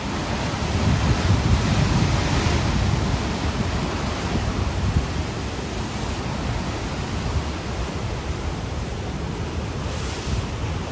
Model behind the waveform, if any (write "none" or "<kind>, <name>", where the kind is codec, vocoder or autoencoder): none